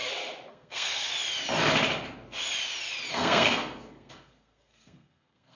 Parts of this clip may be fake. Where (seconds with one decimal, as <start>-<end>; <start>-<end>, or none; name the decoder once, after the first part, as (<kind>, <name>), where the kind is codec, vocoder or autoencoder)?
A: 0.5-1.1 (codec, SNAC); 3.1-5.5